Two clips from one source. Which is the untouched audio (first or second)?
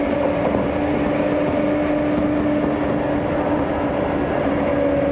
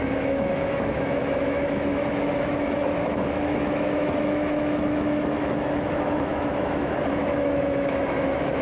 first